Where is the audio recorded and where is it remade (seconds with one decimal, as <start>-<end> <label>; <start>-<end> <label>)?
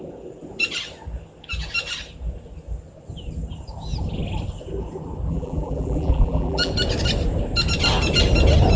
0.0-5.3 recorded; 5.3-6.7 remade; 6.7-8.8 recorded